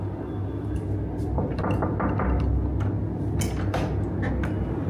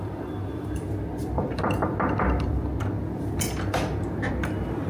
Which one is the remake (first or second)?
second